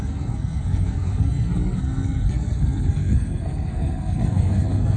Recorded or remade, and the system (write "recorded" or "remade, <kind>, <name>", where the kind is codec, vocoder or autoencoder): remade, codec, SNAC